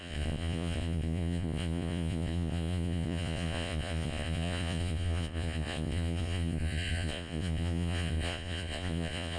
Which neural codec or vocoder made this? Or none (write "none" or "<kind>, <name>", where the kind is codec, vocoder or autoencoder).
vocoder, Vocos